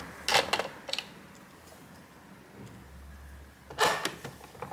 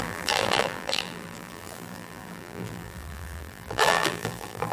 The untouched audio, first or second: first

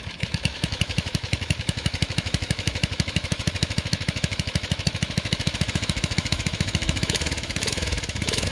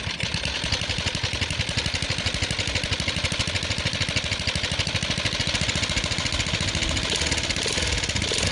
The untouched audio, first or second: second